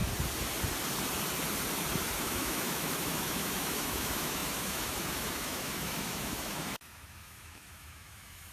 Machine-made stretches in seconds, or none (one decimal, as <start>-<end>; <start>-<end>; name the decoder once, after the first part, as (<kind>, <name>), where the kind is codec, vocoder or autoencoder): 2.2-8.5 (autoencoder, DAC-VAE)